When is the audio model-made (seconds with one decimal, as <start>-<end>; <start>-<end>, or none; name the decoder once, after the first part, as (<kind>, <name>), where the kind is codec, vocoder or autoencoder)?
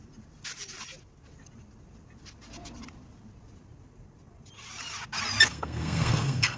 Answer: 5.5-6.6 (codec, SNAC)